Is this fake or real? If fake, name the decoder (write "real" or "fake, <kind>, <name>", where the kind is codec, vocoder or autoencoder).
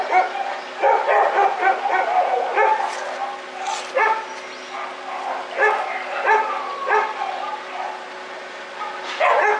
real